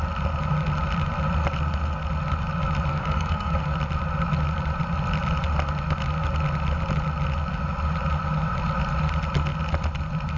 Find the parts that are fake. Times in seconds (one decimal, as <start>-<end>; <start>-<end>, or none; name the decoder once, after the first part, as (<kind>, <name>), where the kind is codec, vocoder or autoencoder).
2.9-3.6 (codec, SNAC)